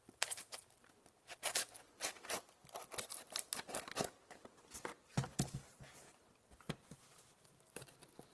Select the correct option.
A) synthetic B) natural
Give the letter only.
B